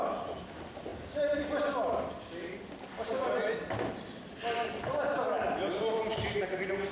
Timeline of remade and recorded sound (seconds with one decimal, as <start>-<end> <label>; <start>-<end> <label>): 0.0-4.9 recorded; 4.9-6.4 remade; 6.4-6.9 recorded